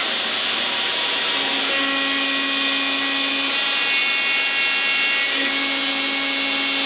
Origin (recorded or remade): recorded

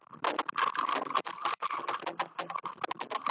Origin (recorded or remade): recorded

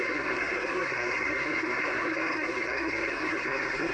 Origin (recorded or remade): remade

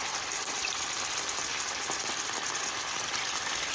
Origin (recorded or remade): recorded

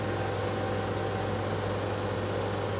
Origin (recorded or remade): recorded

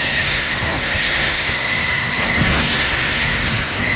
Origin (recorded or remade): remade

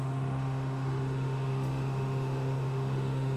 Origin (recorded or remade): remade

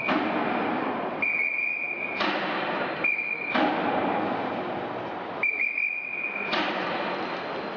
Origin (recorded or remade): recorded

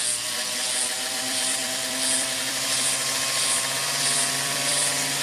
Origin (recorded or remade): remade